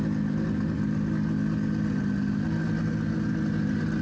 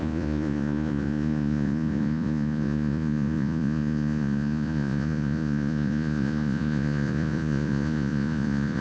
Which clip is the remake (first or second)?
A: second